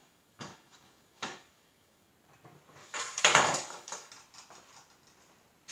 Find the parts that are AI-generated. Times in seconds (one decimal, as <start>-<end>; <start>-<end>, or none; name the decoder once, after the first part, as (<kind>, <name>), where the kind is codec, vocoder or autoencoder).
0.0-2.1 (codec, DAC); 2.8-4.1